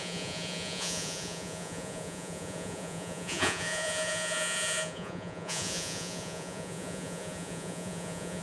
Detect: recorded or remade remade